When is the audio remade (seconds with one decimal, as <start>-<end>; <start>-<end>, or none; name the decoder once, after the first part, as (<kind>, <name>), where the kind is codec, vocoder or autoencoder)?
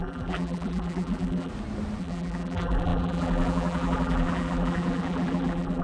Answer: 0.0-1.5 (vocoder, BigVGAN v2); 2.0-5.8